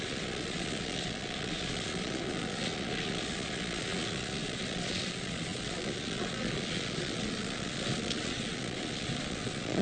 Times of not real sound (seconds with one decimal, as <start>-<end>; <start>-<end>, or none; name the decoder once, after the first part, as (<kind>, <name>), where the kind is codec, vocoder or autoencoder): 0.0-9.8 (vocoder, Vocos)